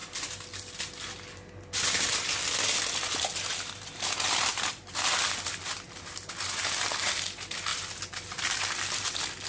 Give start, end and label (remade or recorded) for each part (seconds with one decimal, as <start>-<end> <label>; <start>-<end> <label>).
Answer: 0.0-7.7 recorded; 7.7-8.5 remade; 8.5-9.5 recorded